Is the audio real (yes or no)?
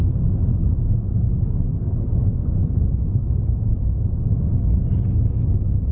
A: yes